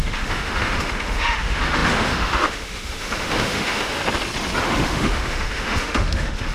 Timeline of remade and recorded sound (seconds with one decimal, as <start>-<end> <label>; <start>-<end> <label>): 0.0-4.0 remade; 4.0-4.6 recorded; 4.6-6.5 remade